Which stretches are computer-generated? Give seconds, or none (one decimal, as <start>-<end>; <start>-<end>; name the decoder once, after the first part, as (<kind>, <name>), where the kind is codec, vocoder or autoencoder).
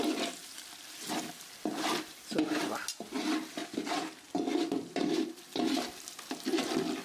none